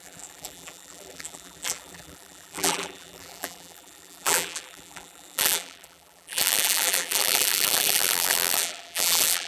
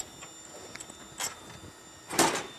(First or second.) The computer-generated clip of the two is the first